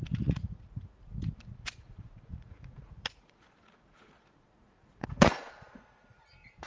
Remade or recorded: remade